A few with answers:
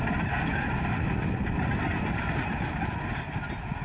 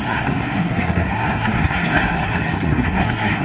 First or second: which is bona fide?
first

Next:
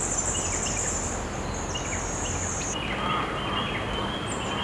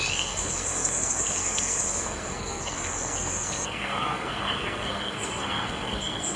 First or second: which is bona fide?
first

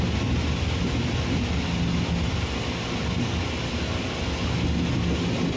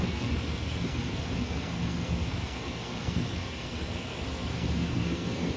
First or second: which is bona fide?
first